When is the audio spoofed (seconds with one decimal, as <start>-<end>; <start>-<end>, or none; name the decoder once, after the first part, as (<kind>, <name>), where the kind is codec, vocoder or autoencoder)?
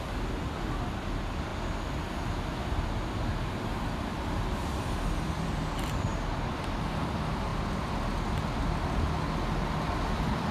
0.0-1.5 (vocoder, BigVGAN v2); 3.5-7.5; 10.0-10.5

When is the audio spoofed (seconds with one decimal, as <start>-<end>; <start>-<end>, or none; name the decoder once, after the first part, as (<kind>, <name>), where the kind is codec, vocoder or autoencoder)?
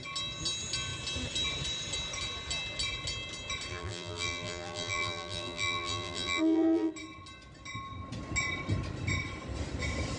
3.7-6.9 (vocoder, BigVGAN v2)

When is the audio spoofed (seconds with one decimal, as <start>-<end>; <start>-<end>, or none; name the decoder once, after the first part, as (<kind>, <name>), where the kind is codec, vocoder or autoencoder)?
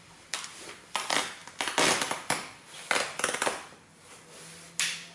none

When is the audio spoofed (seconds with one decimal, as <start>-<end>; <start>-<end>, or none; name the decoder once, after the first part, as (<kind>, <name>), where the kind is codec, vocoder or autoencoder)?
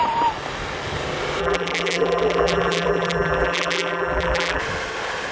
1.4-4.6 (vocoder, BigVGAN v2)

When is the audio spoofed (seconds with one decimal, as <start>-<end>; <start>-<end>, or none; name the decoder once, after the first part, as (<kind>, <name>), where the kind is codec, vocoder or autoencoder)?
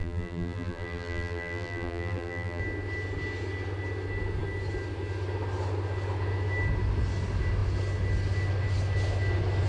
0.0-2.6 (vocoder, BigVGAN v2)